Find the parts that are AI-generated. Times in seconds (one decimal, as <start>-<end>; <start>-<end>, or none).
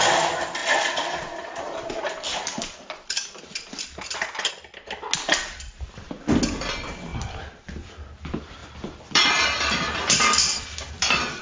0.6-4.5; 7.1-7.6; 8.6-11.4